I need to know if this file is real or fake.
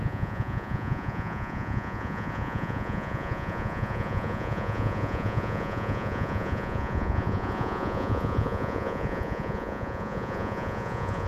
fake